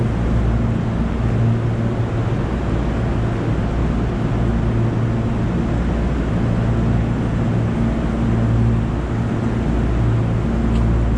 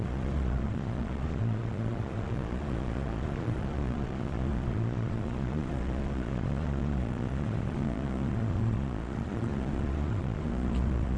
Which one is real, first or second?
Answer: first